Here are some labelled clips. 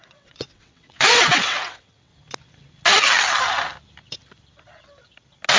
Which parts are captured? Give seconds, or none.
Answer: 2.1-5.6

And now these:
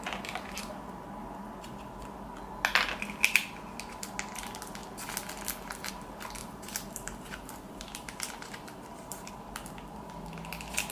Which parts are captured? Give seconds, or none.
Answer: 0.0-6.4; 9.3-10.9

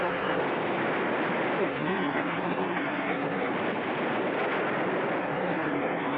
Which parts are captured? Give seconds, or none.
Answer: 0.4-1.6; 3.5-5.2

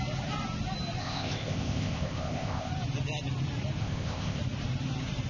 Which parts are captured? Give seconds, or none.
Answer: 0.0-1.0; 2.7-3.8; 4.4-5.3

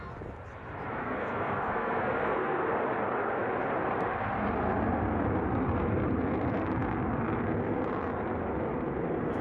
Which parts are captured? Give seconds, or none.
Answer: 0.0-1.0; 2.7-9.4

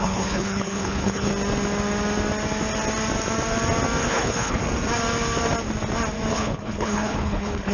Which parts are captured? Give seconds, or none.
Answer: 1.3-4.0; 4.6-6.3